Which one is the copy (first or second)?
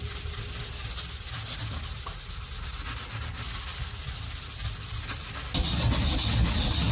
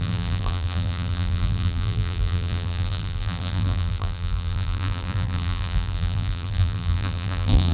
second